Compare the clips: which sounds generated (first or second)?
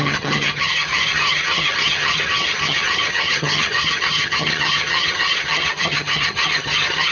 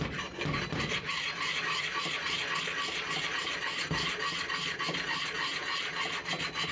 first